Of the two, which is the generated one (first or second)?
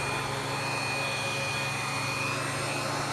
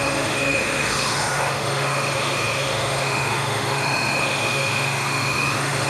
second